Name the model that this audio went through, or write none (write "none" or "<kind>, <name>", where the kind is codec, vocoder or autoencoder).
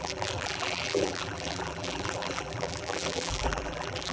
vocoder, BigVGAN v2